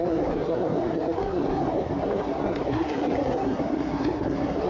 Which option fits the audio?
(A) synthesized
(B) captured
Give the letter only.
A